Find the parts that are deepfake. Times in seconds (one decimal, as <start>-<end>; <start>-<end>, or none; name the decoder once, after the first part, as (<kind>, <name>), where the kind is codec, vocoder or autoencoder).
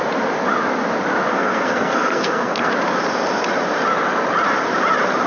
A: 1.3-2.7 (codec, SNAC)